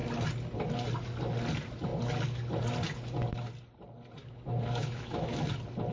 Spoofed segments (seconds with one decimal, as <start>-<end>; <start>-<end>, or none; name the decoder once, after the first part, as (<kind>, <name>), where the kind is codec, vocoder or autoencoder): 4.2-5.4 (autoencoder, DAC-VAE)